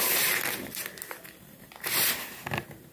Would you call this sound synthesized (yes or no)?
no